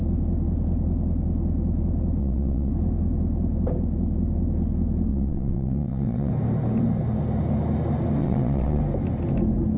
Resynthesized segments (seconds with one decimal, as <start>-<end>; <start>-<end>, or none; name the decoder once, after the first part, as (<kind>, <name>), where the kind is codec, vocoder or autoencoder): 2.2-2.7 (vocoder, WaveNeXt); 5.1-6.3; 8.2-8.8